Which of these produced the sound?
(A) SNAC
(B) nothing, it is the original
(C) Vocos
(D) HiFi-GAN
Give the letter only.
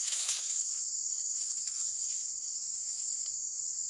A